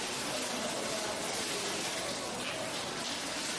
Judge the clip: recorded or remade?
recorded